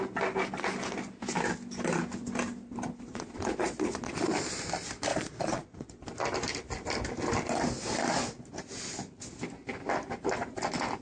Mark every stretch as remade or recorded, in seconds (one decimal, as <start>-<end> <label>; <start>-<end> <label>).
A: 0.0-3.1 recorded; 3.1-4.3 remade; 4.3-5.1 recorded; 5.1-6.0 remade; 6.0-11.0 recorded